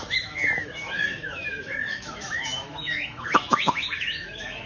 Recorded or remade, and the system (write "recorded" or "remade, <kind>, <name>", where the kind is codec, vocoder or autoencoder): remade, autoencoder, DAC-VAE